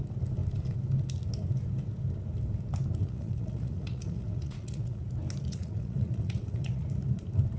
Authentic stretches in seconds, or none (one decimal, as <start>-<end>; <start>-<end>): 0.0-3.0; 5.0-5.5; 6.9-7.6